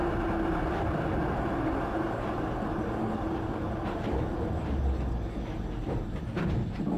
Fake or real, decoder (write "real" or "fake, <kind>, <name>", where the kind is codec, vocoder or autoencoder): real